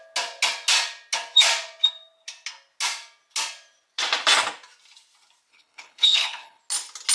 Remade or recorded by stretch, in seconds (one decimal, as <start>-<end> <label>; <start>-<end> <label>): 0.0-5.5 recorded; 5.5-6.6 remade; 6.6-7.1 recorded